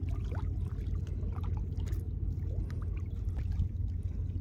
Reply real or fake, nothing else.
real